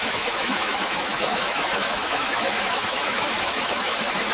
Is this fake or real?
fake